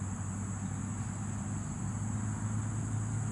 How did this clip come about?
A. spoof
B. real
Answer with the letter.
B